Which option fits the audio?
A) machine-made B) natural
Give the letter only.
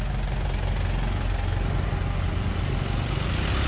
B